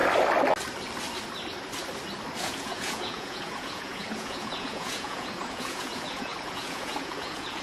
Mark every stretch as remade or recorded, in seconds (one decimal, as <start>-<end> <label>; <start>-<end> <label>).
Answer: 0.0-2.4 recorded; 2.4-7.6 remade